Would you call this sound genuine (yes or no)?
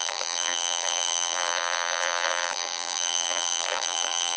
no